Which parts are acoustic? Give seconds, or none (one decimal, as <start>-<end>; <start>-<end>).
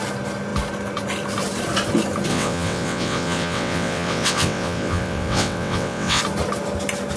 0.0-2.3; 6.2-7.2